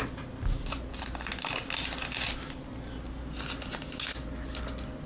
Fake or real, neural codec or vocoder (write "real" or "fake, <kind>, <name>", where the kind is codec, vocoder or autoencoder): real